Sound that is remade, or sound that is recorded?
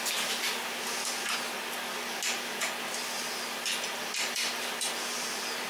recorded